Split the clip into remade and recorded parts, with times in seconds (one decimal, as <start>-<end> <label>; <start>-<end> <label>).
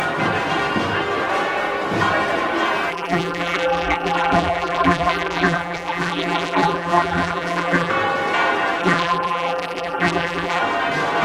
0.0-2.9 recorded; 2.9-7.9 remade; 7.9-8.8 recorded; 8.8-10.6 remade; 10.6-11.2 recorded